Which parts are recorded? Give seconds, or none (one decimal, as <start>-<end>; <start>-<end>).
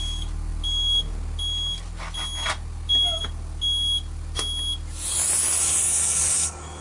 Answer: 0.0-5.8